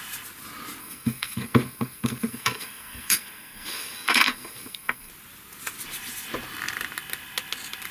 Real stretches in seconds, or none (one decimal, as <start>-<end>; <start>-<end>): 0.0-0.8; 5.1-7.9